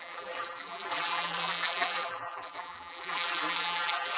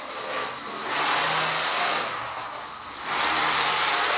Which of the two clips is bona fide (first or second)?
second